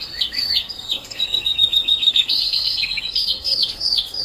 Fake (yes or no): yes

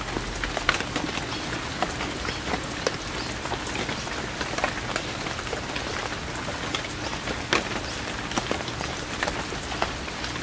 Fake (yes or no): no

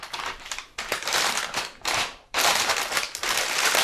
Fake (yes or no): yes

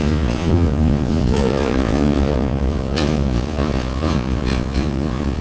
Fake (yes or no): yes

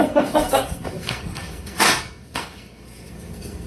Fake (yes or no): yes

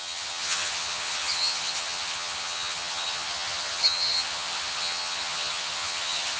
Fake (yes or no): yes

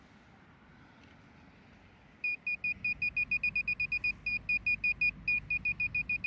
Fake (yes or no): no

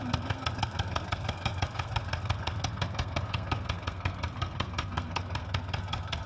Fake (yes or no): yes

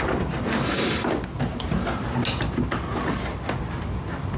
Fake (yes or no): no